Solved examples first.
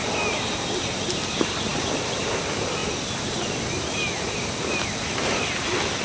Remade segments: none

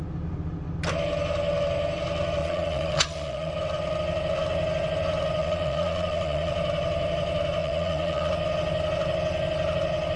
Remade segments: 2.4-3.5 (vocoder, Vocos); 5.4-6.5; 7.6-8.3

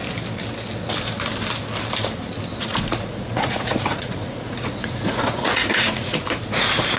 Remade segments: 2.6-6.2 (vocoder, Vocos)